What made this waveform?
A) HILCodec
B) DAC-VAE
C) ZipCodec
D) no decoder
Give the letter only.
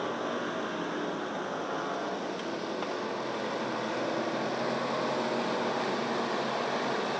D